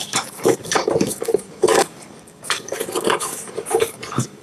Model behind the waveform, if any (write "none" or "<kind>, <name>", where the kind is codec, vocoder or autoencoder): codec, DAC